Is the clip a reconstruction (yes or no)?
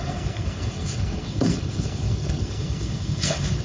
yes